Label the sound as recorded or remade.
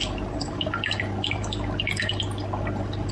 recorded